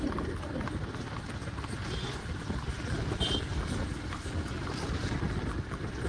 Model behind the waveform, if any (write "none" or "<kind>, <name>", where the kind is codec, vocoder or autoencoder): none